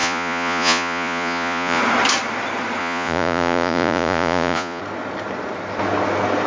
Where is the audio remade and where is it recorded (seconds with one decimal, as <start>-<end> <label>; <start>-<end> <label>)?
0.0-1.8 remade; 1.8-2.8 recorded; 2.8-4.8 remade; 4.8-6.5 recorded